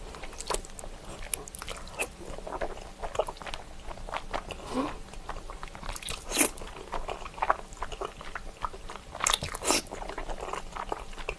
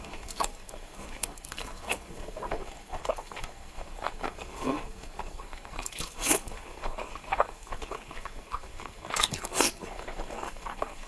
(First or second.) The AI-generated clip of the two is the second